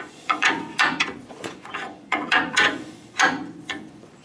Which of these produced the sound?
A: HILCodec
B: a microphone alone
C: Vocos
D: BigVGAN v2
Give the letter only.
C